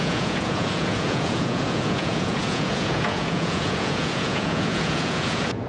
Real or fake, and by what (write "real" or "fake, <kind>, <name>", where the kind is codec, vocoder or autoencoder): fake, vocoder, Vocos